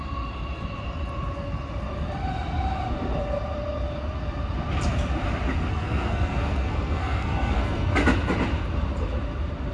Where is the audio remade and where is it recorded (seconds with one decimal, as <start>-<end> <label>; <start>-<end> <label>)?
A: 0.0-5.7 recorded; 5.7-7.9 remade; 7.9-9.7 recorded